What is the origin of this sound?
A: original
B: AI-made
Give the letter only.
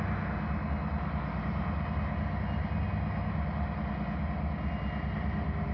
A